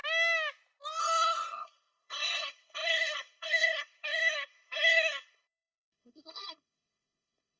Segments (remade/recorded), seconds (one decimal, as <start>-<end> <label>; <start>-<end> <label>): 0.0-1.0 recorded; 1.0-7.6 remade